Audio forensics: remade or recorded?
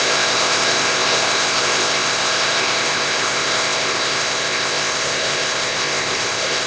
remade